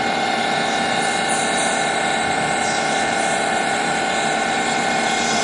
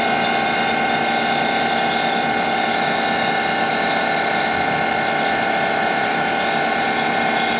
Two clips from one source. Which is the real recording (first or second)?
second